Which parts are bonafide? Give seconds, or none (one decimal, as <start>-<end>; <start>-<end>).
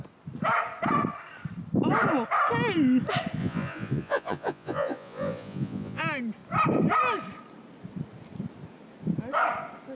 0.0-3.4; 6.0-9.9